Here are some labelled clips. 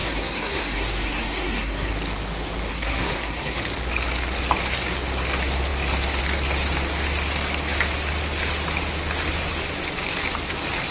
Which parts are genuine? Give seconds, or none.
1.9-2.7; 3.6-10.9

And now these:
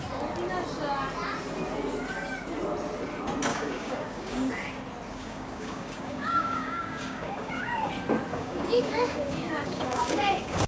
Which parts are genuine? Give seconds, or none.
0.0-3.5; 4.5-5.1; 7.9-8.3

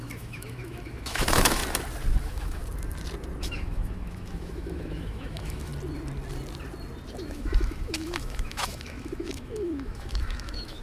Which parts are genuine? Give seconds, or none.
1.6-2.2; 2.6-3.4; 5.7-7.2

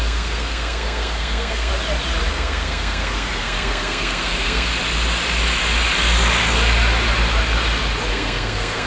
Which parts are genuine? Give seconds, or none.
1.7-2.3; 4.7-8.1

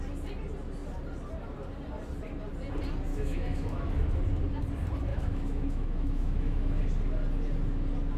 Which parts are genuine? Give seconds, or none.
0.0-3.1; 3.9-5.1; 6.8-8.2

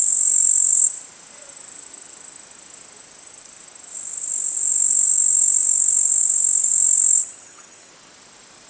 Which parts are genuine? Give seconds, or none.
0.0-7.2; 7.9-8.7

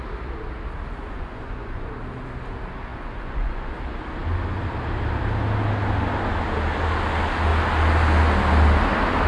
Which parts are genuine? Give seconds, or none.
0.0-1.0; 2.0-2.9; 3.7-9.3

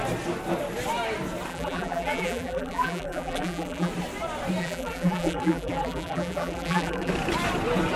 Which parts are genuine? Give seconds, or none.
0.0-1.5; 3.9-4.6; 7.1-8.0